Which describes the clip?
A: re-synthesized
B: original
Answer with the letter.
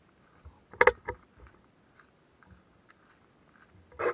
B